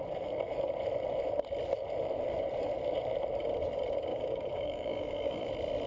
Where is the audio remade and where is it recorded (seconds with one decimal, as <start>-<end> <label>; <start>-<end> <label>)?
0.0-4.1 recorded; 4.1-5.5 remade; 5.5-5.9 recorded